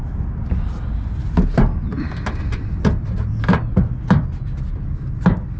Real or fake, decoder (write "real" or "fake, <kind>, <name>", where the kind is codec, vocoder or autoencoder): real